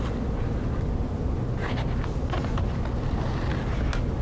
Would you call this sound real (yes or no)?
yes